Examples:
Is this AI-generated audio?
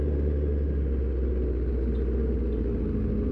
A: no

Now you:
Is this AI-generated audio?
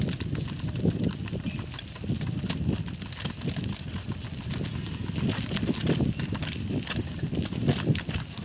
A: no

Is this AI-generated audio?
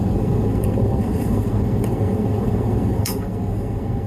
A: yes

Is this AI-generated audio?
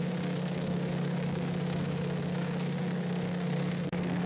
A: yes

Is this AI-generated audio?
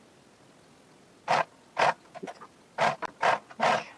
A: no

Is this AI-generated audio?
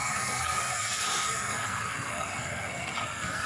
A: yes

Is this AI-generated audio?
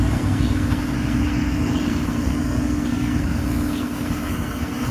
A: yes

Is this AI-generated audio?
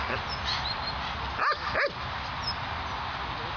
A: no